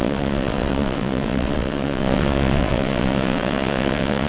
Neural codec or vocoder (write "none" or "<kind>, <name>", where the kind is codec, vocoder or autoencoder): vocoder, WaveNeXt